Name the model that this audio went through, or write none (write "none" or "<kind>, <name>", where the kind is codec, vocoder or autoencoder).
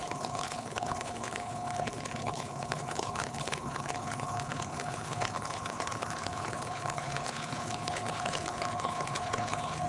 codec, HILCodec